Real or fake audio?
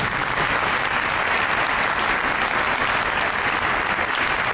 real